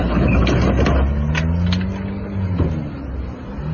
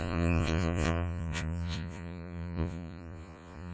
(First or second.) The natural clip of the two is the first